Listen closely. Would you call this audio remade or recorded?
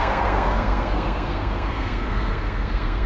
remade